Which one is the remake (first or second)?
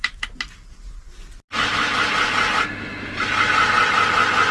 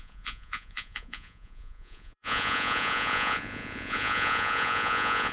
second